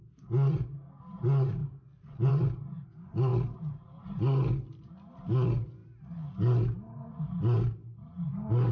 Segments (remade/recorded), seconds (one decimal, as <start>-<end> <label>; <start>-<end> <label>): 0.0-1.6 recorded; 1.6-2.3 remade; 2.3-3.3 recorded; 3.3-4.0 remade; 4.0-8.7 recorded